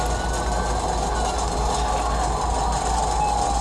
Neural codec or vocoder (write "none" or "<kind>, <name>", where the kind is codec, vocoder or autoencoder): none